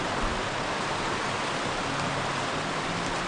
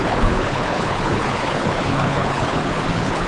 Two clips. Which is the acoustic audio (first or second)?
first